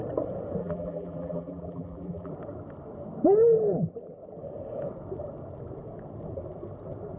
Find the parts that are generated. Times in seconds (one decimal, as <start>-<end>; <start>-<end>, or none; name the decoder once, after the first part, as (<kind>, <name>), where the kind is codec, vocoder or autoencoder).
0.6-2.3 (vocoder, BigVGAN v2)